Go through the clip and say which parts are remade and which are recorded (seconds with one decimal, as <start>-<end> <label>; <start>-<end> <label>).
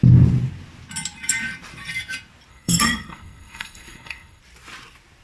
0.0-2.5 recorded; 2.5-4.4 remade; 4.4-5.2 recorded